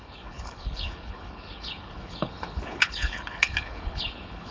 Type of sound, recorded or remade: remade